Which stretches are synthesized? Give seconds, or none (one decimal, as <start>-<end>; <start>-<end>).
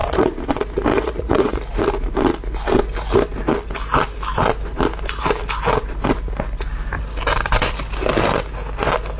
0.0-0.5; 0.9-1.6